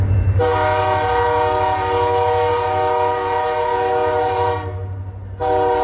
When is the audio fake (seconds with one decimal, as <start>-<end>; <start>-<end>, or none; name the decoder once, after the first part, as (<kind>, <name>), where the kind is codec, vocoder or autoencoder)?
none